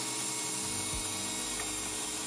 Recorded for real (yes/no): yes